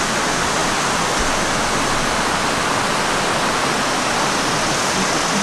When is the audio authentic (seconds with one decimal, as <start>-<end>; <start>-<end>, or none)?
0.0-5.4